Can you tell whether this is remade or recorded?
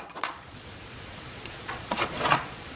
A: remade